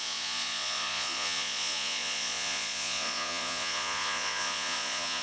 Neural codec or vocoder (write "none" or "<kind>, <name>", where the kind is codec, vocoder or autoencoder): vocoder, Vocos